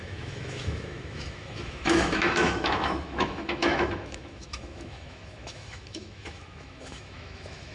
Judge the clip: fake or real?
fake